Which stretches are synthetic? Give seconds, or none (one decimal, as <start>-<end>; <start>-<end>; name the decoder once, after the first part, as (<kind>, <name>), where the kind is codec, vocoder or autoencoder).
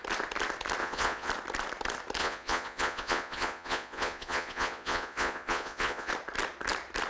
0.8-1.3 (vocoder, Vocos); 2.2-6.1